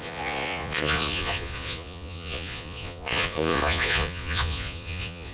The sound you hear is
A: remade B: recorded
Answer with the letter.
A